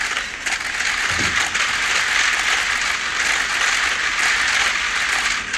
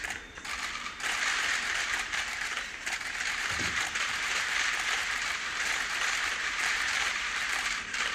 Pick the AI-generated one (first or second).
second